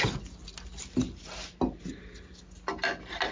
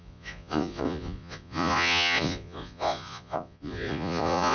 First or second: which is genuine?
first